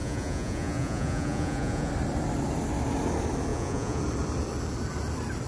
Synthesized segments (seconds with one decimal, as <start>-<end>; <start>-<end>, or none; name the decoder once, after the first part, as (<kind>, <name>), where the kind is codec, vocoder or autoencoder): 0.0-1.9 (vocoder, Vocos); 3.5-4.0